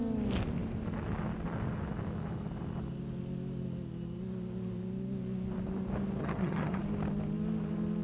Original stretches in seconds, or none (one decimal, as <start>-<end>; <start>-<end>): 0.0-6.2; 6.8-8.0